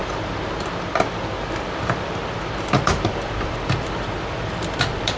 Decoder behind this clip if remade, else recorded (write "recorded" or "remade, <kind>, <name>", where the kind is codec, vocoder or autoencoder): remade, vocoder, BigVGAN v2